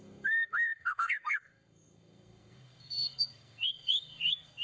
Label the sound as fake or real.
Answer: fake